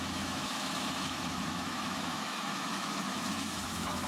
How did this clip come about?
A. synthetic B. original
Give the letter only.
A